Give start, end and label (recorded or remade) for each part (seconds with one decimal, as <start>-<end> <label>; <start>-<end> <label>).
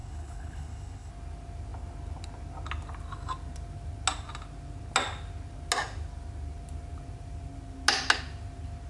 0.0-1.1 remade; 1.1-8.9 recorded